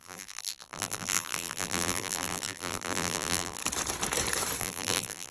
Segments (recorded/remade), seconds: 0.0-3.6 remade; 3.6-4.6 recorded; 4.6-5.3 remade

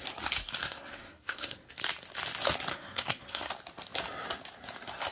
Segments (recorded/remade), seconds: 0.0-0.6 recorded; 0.6-1.7 remade; 1.7-2.7 recorded; 2.7-3.5 remade; 3.5-5.1 recorded

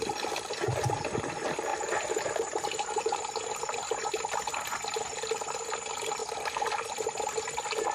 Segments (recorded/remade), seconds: 0.0-1.7 recorded; 1.7-3.2 remade; 3.2-7.9 recorded

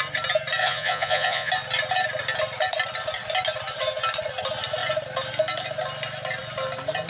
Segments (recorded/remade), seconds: 0.0-0.6 recorded; 0.6-1.5 remade; 1.5-7.1 recorded

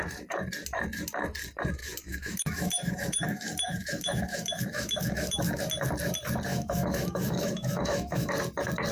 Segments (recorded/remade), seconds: 0.0-1.8 recorded; 1.8-5.6 remade; 5.6-6.5 recorded; 6.5-8.3 remade; 8.3-8.9 recorded